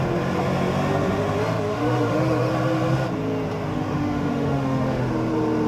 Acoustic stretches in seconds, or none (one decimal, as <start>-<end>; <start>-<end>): 0.0-1.7; 2.5-3.7; 5.1-5.7